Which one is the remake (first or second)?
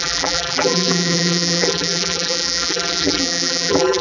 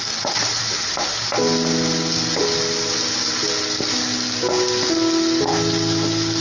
first